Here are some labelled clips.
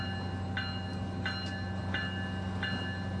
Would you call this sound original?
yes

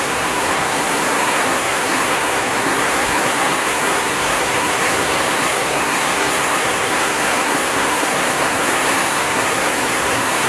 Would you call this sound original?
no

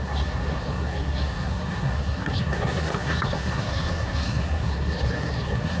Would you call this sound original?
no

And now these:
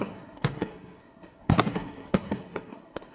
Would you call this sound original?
no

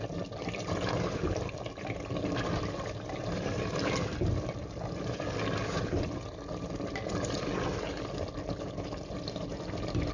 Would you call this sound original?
yes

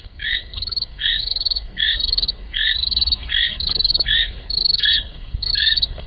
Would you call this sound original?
no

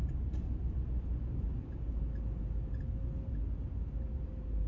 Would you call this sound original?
yes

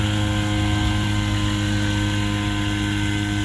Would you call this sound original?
yes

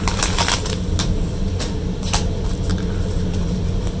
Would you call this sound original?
yes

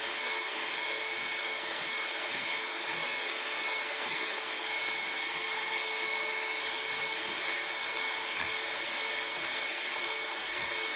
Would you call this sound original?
no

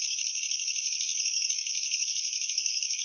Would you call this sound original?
no